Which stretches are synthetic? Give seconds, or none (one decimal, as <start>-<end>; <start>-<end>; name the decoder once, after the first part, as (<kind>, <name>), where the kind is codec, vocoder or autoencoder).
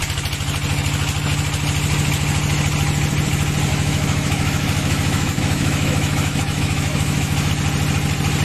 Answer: 3.7-7.5 (autoencoder, DAC-VAE)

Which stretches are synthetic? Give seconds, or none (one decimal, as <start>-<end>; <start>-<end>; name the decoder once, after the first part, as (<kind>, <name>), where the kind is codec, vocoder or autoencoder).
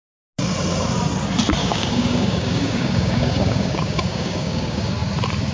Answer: 1.6-4.9 (codec, DAC)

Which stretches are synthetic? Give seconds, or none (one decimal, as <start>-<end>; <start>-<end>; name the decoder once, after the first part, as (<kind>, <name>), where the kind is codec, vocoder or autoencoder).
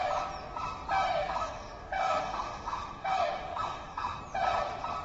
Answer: 1.2-4.2 (autoencoder, DAC-VAE)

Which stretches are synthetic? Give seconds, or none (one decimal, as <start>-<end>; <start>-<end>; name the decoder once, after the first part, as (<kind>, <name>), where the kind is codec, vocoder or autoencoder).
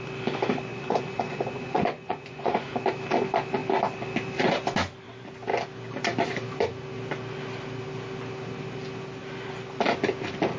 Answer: 0.7-2.7 (vocoder, Vocos)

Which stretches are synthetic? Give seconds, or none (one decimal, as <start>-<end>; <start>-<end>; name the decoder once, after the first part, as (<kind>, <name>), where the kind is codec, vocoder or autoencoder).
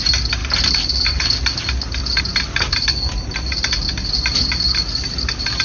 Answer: none